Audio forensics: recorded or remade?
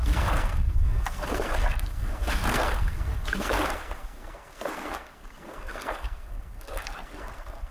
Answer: remade